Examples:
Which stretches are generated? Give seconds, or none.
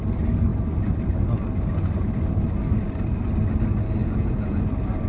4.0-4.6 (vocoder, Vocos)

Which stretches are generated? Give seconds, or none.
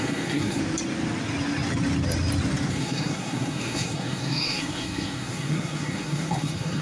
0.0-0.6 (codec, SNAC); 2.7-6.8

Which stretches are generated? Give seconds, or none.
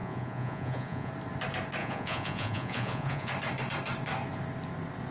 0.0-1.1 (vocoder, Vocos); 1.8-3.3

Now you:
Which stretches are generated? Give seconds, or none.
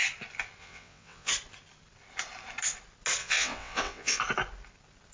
0.6-1.3 (vocoder, WaveNeXt); 3.2-4.2